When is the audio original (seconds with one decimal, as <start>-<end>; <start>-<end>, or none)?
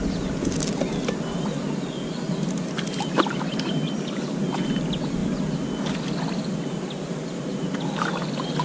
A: 0.0-8.6